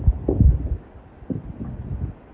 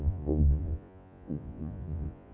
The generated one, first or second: second